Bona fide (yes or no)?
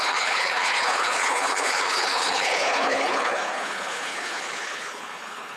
no